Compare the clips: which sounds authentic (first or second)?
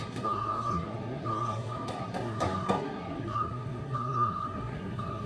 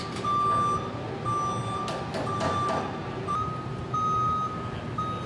second